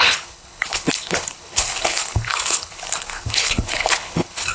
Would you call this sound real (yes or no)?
no